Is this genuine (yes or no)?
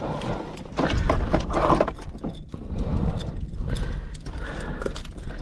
yes